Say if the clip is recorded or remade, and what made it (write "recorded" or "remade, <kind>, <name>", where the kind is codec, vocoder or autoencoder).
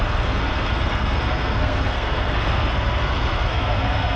remade, codec, SNAC